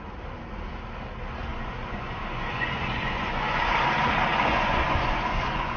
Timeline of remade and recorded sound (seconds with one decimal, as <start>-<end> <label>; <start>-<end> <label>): 0.0-1.5 recorded; 1.5-3.7 remade; 3.7-4.3 recorded; 4.3-5.8 remade